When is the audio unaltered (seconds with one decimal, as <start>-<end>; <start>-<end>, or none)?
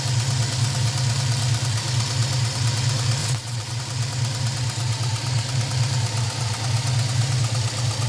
0.0-3.2; 3.8-8.1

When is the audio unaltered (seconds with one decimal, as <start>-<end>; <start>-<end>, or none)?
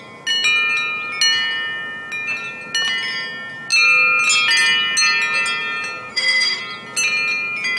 0.0-6.1; 6.6-7.8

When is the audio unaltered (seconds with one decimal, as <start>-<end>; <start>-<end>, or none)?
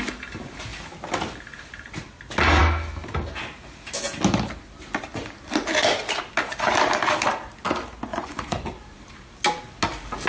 0.0-8.1; 8.7-10.3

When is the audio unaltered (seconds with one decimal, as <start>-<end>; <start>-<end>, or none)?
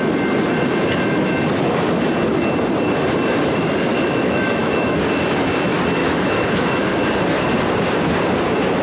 0.0-3.9; 5.0-6.0; 6.9-8.8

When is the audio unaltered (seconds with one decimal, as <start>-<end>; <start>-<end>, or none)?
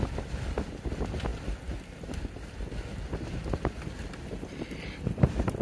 0.0-5.6